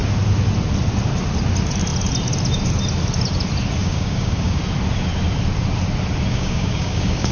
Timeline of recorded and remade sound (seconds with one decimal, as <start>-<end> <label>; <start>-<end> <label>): 0.0-3.8 recorded; 3.8-4.6 remade; 4.6-6.3 recorded; 6.3-7.3 remade